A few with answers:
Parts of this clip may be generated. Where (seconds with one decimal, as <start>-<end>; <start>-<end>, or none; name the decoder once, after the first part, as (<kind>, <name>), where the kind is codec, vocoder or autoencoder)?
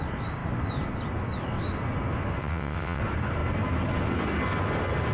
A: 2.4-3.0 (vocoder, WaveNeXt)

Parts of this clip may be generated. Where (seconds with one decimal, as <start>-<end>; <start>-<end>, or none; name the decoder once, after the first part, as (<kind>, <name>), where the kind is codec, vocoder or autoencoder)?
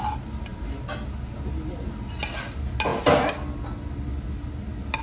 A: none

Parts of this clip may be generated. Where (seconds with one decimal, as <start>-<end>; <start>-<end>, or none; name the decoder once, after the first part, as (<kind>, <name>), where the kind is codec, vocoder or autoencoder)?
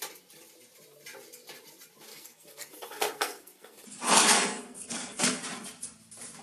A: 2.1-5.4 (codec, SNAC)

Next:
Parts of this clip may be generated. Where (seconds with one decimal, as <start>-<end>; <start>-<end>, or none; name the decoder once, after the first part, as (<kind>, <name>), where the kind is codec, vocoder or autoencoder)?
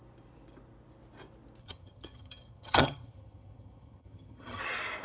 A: 1.6-4.6 (vocoder, HiFi-GAN)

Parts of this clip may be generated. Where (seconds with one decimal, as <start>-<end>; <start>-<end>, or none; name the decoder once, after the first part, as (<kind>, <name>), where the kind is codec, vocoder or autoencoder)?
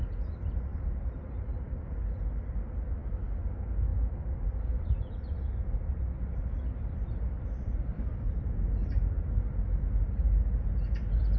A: 0.7-2.0 (vocoder, BigVGAN v2); 3.9-8.5